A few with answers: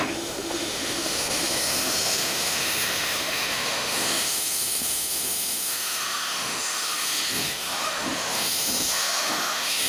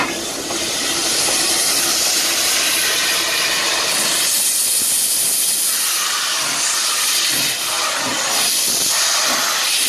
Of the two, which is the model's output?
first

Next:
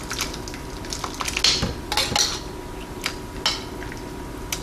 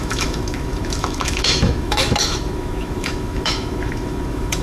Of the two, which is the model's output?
second